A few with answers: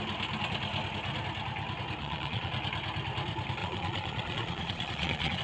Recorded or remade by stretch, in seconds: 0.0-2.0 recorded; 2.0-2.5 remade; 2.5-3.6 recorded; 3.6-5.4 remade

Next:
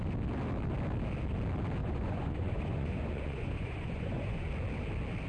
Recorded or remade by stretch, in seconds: 0.0-1.8 recorded; 1.8-4.5 remade; 4.5-5.3 recorded

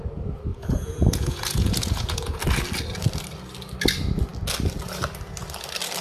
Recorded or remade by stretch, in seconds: 0.0-0.5 recorded; 0.5-2.4 remade; 2.4-6.0 recorded

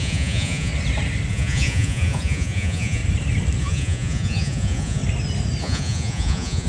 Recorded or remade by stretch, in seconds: 0.0-0.7 remade; 0.7-1.3 recorded; 1.3-3.0 remade; 3.0-3.6 recorded; 3.6-5.0 remade; 5.0-5.6 recorded; 5.6-6.7 remade

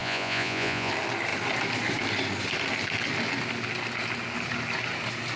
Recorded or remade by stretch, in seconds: 0.0-0.9 remade; 0.9-5.4 recorded